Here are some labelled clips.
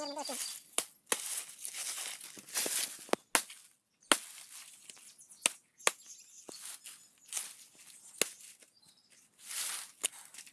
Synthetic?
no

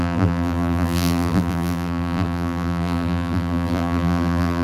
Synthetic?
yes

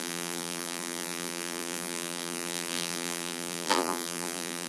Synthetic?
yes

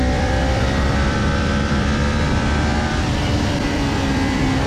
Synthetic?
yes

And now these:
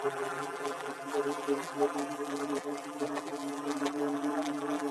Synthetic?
yes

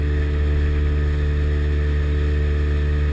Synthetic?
no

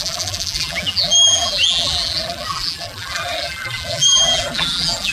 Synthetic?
yes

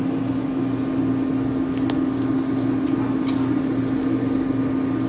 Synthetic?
no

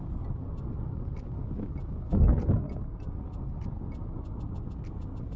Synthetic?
no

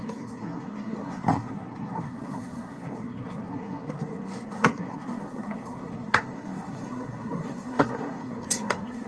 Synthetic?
yes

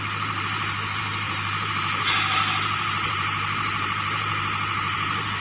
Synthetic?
yes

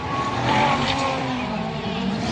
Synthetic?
yes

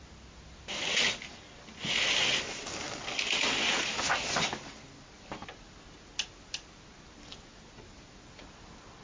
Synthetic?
no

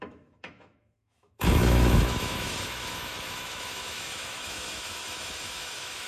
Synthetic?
yes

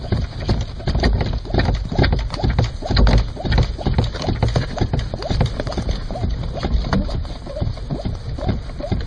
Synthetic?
no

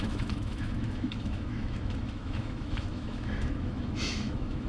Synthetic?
yes